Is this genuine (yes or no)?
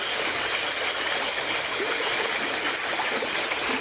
yes